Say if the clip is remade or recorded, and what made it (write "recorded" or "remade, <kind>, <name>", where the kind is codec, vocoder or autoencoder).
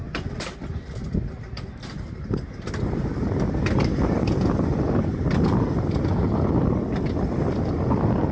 recorded